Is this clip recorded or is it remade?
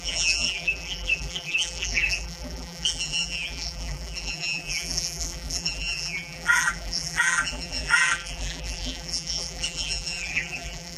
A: remade